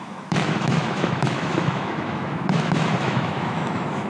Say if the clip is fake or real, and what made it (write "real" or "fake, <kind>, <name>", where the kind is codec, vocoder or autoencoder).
fake, autoencoder, DAC-VAE